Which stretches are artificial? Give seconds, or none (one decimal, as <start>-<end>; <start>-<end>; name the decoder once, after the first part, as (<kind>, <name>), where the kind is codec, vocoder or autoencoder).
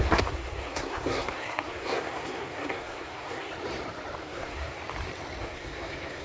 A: 0.0-3.5 (codec, SNAC); 4.2-4.8; 5.4-6.2